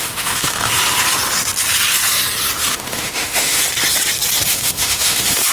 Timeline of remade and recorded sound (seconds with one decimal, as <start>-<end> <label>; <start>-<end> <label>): 0.0-0.7 remade; 0.7-2.6 recorded; 2.6-3.6 remade; 3.6-4.5 recorded; 4.5-5.5 remade